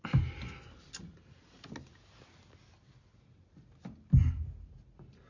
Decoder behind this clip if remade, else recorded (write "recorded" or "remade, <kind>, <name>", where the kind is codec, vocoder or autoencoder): recorded